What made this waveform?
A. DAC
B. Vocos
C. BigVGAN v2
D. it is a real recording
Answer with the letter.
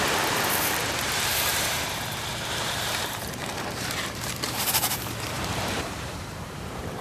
C